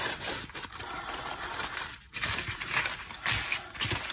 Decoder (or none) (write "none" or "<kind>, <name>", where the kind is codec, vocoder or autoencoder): none